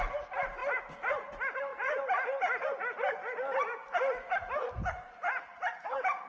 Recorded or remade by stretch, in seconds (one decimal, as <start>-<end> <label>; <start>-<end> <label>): 0.0-6.3 recorded